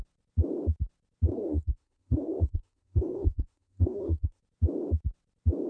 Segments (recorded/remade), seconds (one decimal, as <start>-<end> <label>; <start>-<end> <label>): 0.0-1.3 recorded; 1.3-4.4 remade; 4.4-5.7 recorded